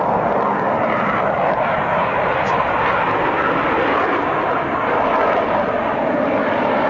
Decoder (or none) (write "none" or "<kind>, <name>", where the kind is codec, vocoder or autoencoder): none